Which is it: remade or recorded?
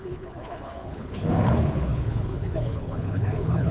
remade